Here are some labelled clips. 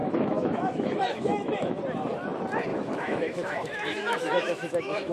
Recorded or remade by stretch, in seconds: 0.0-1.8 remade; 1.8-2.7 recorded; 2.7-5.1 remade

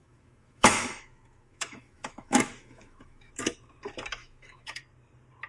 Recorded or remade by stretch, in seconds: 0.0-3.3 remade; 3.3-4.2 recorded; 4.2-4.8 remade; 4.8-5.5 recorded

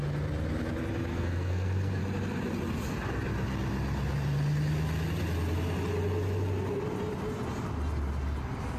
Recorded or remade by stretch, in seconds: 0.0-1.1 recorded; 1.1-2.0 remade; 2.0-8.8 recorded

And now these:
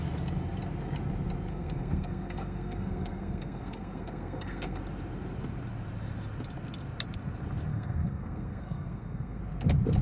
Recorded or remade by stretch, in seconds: 0.0-1.5 recorded; 1.5-4.8 remade; 4.8-7.7 recorded; 7.7-9.4 remade; 9.4-10.0 recorded